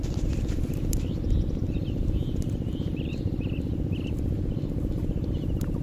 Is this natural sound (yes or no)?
yes